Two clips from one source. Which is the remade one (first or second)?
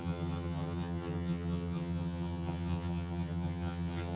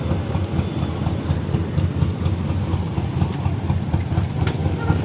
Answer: first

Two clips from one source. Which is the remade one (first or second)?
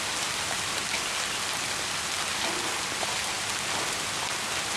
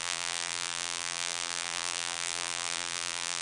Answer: second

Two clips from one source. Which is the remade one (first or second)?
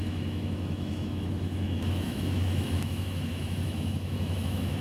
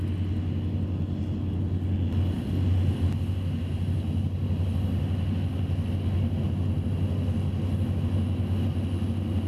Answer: first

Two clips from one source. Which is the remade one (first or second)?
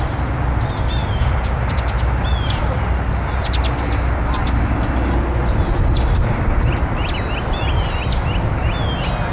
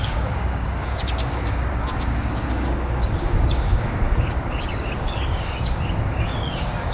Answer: second